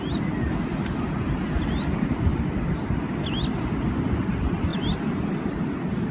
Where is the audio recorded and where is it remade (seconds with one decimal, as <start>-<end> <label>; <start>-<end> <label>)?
0.0-6.1 recorded